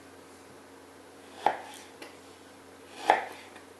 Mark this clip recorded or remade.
recorded